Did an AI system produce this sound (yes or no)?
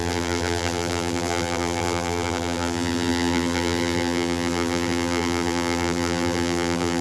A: yes